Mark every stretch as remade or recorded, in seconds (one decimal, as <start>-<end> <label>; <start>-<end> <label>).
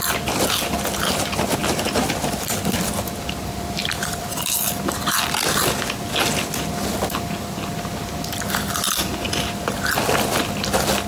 0.0-1.6 recorded; 1.6-2.9 remade; 2.9-3.8 recorded; 3.8-5.6 remade; 5.6-11.1 recorded